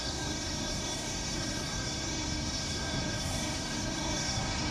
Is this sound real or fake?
fake